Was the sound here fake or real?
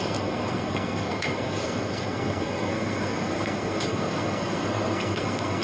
fake